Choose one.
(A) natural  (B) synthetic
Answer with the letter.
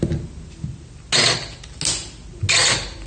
A